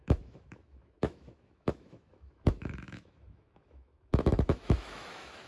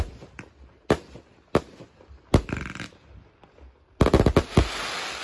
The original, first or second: second